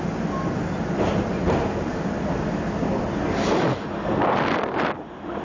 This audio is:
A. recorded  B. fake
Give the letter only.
A